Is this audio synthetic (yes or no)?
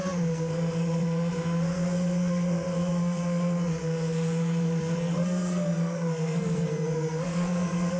yes